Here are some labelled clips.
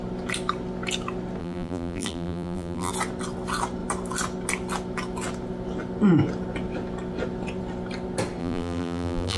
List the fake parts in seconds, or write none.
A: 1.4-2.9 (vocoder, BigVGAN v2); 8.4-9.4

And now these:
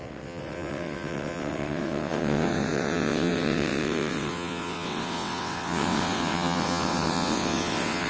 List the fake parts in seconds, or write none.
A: 0.0-8.1 (vocoder, WaveNeXt)